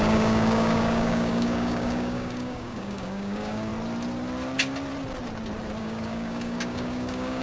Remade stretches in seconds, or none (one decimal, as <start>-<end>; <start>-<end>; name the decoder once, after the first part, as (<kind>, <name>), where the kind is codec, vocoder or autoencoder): 0.0-3.7 (codec, DAC); 5.8-7.4

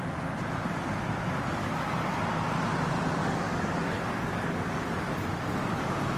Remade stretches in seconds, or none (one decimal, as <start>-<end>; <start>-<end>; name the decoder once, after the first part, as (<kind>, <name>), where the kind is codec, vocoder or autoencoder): 1.6-2.1 (codec, DAC); 3.2-5.8

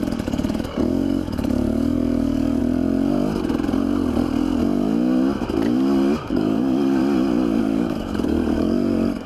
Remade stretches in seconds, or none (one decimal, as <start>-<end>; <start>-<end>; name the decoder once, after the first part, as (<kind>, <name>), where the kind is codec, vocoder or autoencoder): 0.0-2.6 (codec, DAC); 6.3-7.0; 7.6-9.3

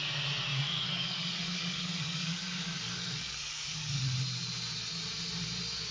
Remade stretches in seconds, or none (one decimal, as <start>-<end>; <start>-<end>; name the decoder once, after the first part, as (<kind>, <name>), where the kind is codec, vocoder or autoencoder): 0.5-4.0 (codec, DAC)